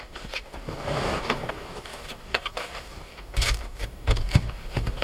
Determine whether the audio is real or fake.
fake